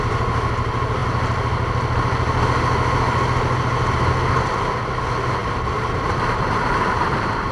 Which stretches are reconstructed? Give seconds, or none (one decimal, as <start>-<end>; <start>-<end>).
5.4-7.5